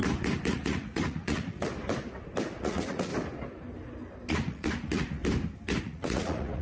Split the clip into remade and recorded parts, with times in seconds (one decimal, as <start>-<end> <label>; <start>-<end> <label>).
0.0-0.5 recorded; 0.5-1.7 remade; 1.7-2.6 recorded; 2.6-3.1 remade; 3.1-4.3 recorded; 4.3-5.2 remade; 5.2-5.8 recorded; 5.8-6.6 remade